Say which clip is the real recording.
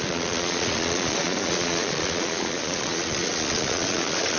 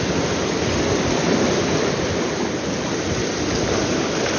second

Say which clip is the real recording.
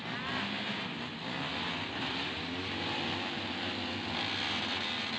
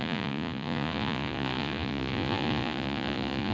first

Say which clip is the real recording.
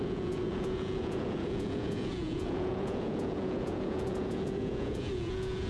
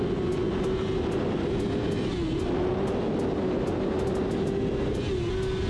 second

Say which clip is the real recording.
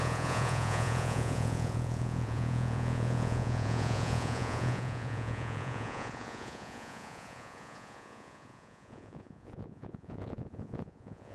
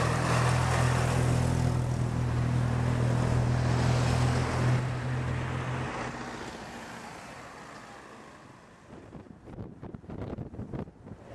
second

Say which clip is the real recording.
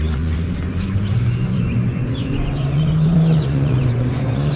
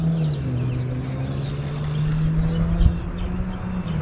second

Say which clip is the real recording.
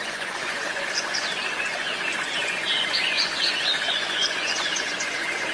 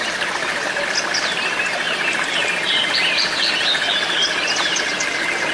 second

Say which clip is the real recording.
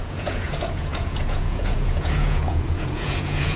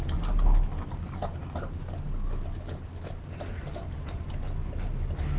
second